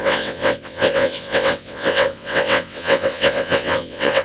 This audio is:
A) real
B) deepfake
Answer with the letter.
B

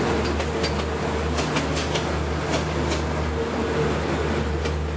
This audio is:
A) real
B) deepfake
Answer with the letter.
A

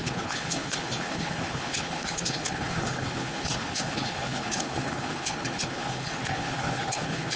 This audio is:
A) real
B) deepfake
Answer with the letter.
B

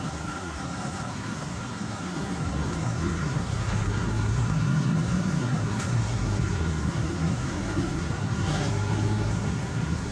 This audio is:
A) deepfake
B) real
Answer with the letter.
A